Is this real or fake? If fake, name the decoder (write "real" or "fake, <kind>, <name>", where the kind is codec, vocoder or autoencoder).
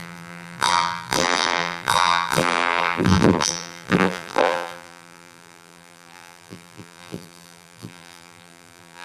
fake, vocoder, BigVGAN v2